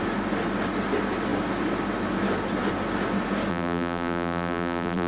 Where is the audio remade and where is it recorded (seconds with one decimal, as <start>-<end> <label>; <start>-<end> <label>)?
0.0-3.5 recorded; 3.5-5.1 remade